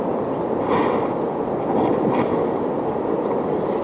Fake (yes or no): no